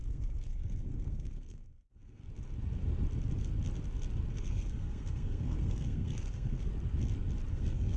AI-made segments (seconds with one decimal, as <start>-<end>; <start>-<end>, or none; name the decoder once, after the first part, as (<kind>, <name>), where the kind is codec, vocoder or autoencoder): 0.0-2.2 (codec, SNAC); 4.3-6.7; 7.5-8.0